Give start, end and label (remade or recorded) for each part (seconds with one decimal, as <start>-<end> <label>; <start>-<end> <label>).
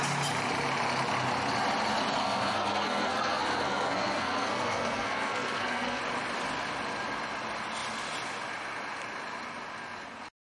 0.0-2.2 recorded; 2.2-6.0 remade; 6.0-10.4 recorded